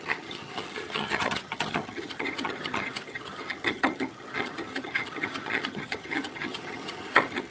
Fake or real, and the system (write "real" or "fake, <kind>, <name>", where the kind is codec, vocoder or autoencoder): fake, vocoder, HiFi-GAN